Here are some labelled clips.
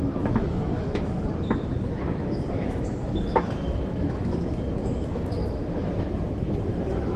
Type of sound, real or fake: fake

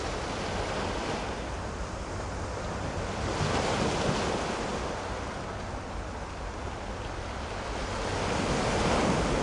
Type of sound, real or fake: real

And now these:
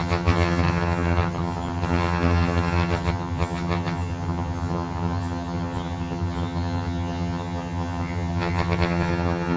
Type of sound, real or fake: fake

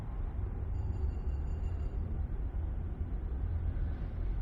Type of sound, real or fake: fake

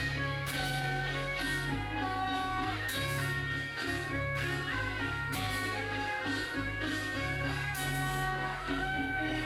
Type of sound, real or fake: fake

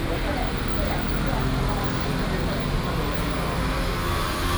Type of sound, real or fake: real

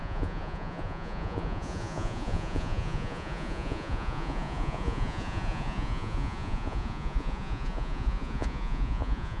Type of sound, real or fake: fake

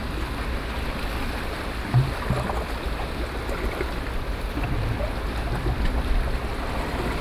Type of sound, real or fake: real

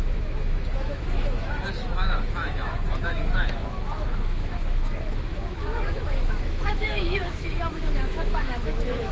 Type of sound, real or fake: fake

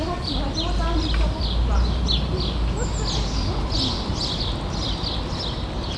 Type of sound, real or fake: real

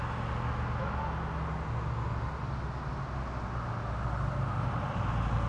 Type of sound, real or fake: real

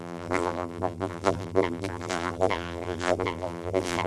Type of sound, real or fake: fake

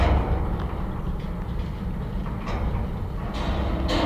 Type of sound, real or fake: real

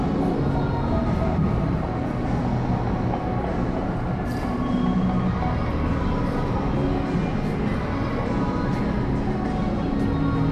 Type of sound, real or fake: real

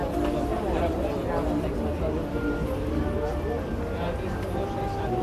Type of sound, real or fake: real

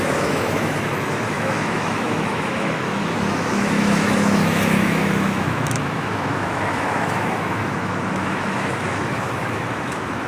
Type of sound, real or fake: fake